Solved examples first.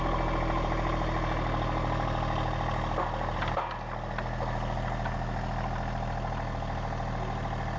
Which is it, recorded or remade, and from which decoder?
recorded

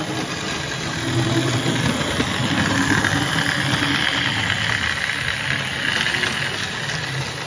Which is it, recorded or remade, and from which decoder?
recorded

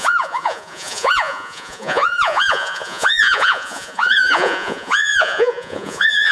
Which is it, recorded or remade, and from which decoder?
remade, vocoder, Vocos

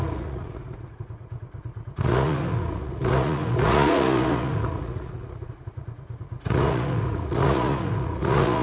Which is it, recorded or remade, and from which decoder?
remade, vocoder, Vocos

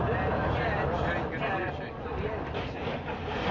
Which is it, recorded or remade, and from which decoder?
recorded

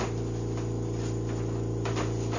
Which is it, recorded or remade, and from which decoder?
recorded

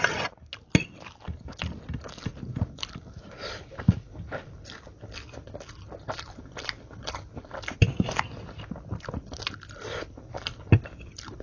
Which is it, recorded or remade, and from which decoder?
recorded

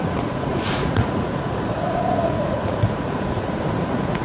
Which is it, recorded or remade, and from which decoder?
remade, vocoder, Vocos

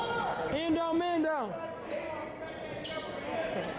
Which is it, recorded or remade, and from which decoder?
recorded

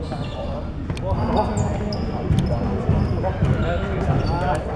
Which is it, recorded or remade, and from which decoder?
recorded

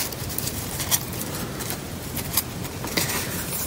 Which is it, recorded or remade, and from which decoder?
recorded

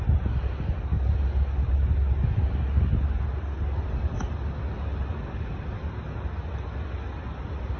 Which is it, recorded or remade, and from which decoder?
recorded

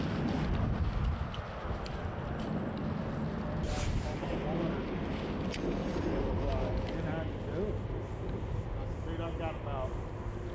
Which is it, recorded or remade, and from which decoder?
recorded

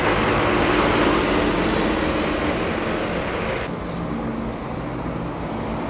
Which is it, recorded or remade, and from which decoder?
recorded